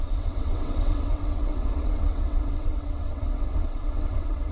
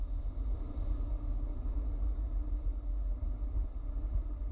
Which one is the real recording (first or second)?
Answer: second